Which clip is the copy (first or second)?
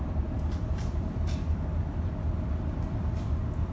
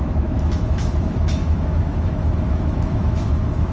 second